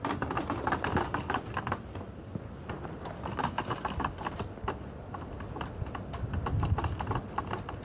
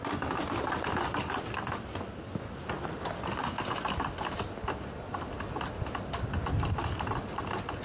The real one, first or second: second